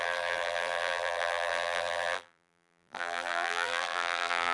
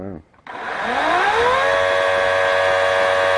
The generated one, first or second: first